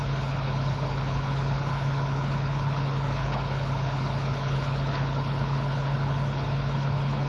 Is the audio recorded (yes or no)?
no